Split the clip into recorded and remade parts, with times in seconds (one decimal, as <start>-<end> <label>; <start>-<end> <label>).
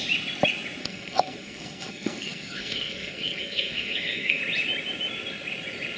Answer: 0.0-0.8 recorded; 0.8-4.4 remade; 4.4-6.0 recorded